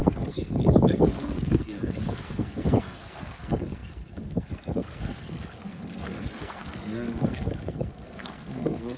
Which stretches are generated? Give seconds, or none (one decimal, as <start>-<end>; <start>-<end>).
0.0-9.0